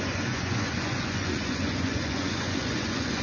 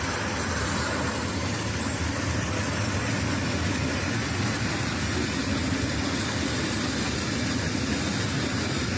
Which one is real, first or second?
second